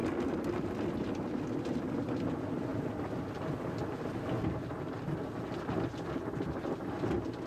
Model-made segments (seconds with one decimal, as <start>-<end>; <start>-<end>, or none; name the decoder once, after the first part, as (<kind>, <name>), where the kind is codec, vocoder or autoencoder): 2.7-4.0 (vocoder, BigVGAN v2)